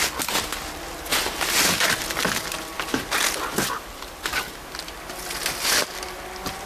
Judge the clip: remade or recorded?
recorded